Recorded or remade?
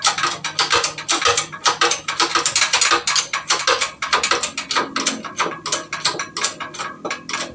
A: recorded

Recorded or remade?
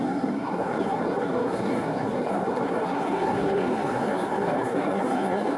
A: remade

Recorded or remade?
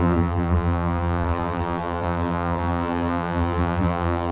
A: remade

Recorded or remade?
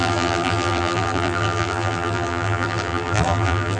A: remade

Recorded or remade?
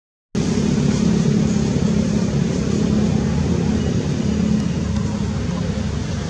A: recorded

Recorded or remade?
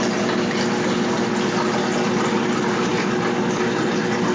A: recorded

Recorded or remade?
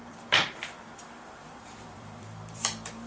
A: remade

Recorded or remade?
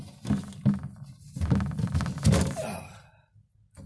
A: recorded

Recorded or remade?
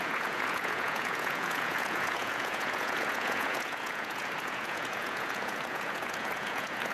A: remade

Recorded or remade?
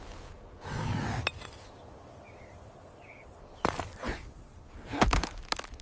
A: recorded